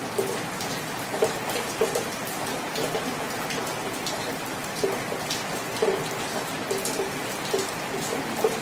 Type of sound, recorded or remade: recorded